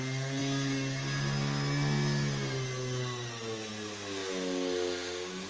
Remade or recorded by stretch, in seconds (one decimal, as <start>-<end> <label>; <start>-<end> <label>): 0.0-5.5 recorded